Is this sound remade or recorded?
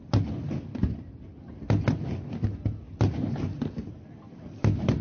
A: recorded